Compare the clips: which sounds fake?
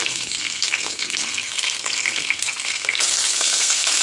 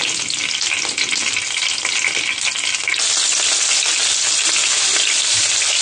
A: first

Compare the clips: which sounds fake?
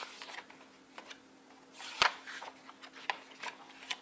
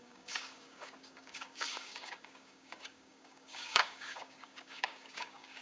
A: second